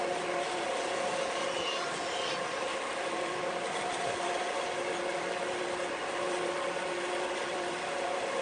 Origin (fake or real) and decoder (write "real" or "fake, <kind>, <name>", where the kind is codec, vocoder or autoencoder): real